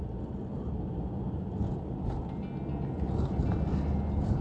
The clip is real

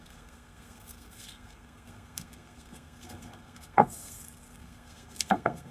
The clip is fake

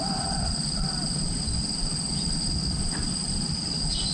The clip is fake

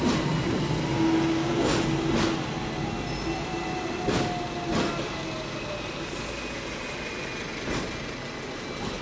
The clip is real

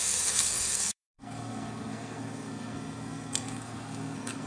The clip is fake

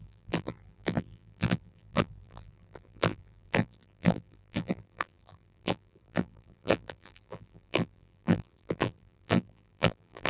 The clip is fake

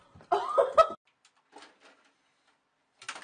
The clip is real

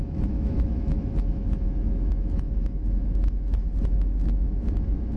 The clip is fake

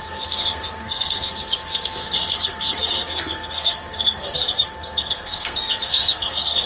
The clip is fake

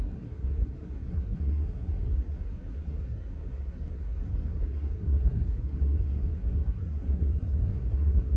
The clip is fake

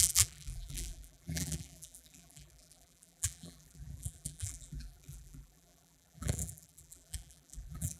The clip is fake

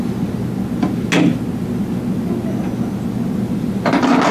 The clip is real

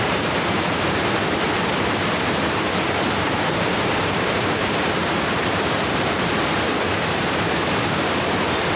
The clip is fake